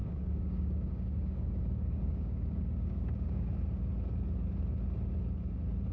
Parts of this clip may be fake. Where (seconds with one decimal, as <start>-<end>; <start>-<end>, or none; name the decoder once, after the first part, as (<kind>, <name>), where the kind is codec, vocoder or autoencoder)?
0.0-3.5 (codec, DAC)